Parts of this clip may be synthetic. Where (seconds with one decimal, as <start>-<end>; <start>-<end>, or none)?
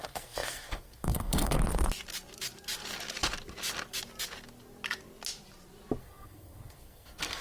0.0-1.6; 6.0-7.4